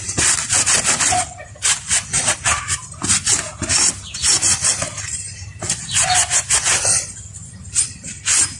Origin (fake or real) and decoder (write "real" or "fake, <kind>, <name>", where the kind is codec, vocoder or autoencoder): real